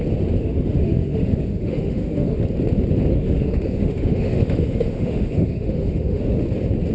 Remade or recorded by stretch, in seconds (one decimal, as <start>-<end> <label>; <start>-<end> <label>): 0.0-0.4 recorded; 0.4-2.4 remade; 2.4-3.1 recorded; 3.1-6.2 remade; 6.2-6.9 recorded